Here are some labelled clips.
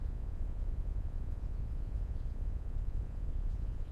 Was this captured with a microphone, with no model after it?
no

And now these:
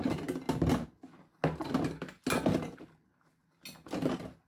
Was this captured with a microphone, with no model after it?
yes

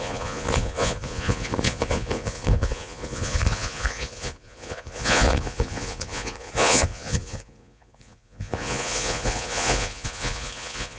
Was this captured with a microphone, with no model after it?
no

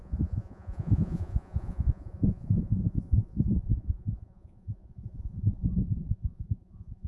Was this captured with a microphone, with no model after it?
no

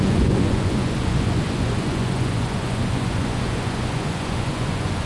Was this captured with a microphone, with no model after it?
no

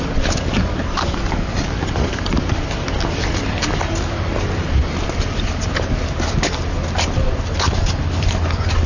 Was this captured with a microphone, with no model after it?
yes